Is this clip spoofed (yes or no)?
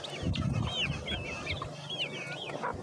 no